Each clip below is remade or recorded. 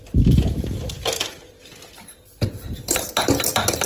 recorded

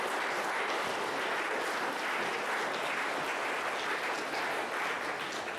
recorded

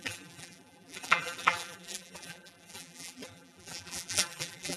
remade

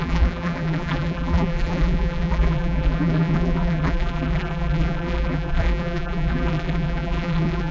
remade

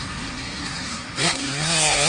remade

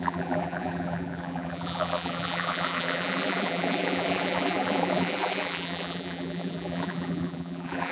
remade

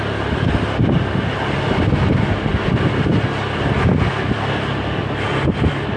recorded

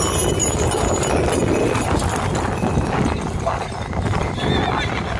recorded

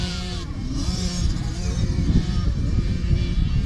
remade